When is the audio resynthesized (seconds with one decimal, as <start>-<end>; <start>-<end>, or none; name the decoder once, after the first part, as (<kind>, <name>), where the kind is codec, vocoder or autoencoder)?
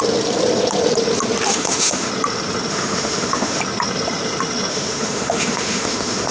1.5-2.1 (autoencoder, DAC-VAE); 2.7-3.6; 4.7-6.3